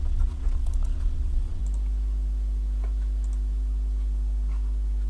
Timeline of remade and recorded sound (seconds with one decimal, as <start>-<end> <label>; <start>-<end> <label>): 0.0-1.6 remade; 1.6-5.1 recorded